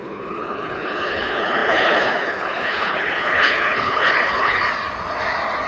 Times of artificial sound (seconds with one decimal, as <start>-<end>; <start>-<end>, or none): 0.0-4.6